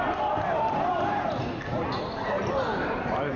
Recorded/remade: remade